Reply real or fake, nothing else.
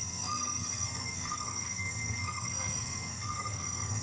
fake